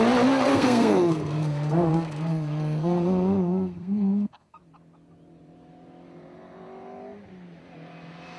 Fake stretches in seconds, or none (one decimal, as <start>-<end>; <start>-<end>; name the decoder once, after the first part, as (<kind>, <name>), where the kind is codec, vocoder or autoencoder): 0.5-4.6 (codec, SNAC)